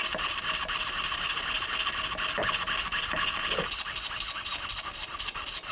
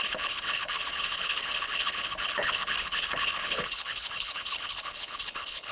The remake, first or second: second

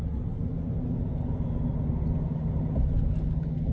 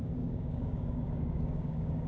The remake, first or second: second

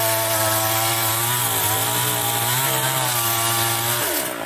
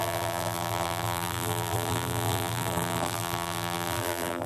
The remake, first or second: second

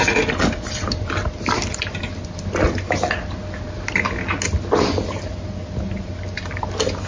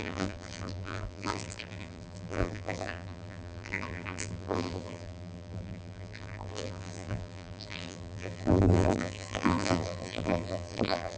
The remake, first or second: second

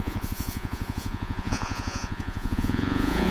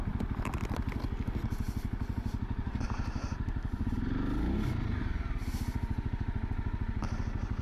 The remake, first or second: first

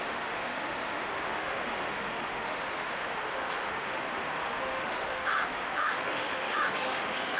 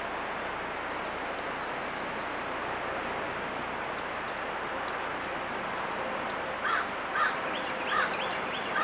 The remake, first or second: first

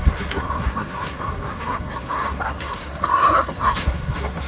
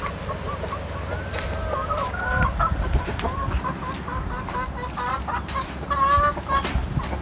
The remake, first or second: first